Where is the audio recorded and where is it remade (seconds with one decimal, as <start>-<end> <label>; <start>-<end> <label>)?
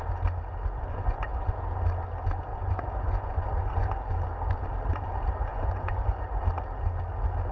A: 0.0-0.9 recorded; 0.9-1.5 remade; 1.5-2.5 recorded; 2.5-4.1 remade; 4.1-5.5 recorded; 5.5-6.4 remade; 6.4-7.5 recorded